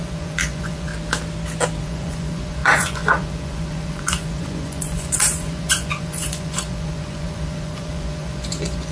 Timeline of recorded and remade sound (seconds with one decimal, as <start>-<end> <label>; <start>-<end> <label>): 0.0-0.9 remade; 0.9-1.8 recorded; 1.8-8.9 remade